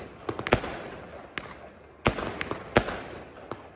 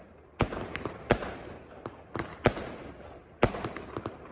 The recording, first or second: first